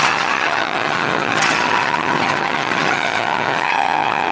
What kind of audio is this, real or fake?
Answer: fake